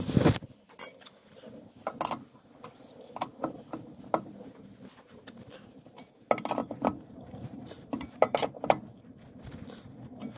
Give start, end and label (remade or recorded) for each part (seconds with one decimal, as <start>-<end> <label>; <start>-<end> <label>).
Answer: 0.0-6.6 recorded; 6.6-8.6 remade; 8.6-10.4 recorded